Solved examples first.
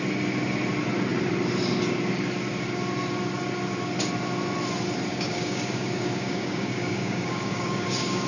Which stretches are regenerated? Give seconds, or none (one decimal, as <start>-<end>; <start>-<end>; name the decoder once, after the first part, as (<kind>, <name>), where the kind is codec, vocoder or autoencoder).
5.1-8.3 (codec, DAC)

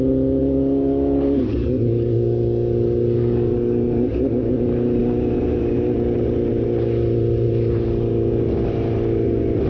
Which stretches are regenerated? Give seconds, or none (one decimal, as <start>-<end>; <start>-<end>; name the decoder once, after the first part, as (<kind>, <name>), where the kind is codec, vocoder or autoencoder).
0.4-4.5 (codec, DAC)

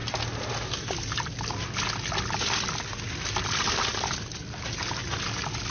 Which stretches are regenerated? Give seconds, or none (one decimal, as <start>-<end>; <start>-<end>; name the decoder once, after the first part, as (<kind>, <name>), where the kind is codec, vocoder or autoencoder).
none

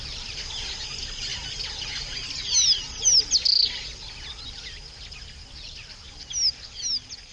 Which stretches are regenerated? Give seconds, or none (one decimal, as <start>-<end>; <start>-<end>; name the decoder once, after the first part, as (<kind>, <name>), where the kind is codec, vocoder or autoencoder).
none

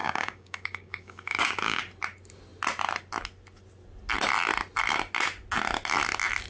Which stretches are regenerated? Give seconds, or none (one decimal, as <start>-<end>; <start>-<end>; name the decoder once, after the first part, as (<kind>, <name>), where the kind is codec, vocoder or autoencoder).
0.0-1.8 (codec, DAC)

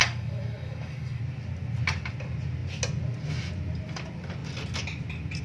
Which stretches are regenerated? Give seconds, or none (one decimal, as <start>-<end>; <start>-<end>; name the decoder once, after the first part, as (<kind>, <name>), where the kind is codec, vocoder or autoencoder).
0.0-1.2 (codec, DAC)

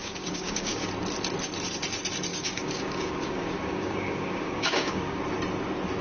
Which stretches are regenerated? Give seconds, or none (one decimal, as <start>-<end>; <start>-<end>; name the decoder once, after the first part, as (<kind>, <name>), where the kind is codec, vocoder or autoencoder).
0.0-0.9 (codec, DAC); 2.3-5.2